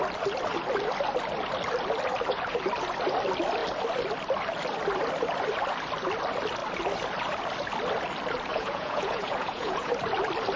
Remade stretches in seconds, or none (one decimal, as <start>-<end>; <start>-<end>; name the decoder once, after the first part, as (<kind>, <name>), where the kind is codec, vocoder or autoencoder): 8.5-9.9 (vocoder, Vocos)